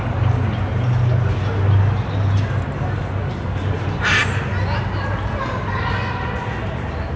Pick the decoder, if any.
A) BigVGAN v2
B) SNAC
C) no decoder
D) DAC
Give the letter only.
C